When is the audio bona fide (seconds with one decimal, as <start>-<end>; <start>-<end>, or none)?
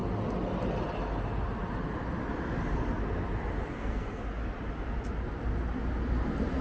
0.0-3.8; 4.2-6.6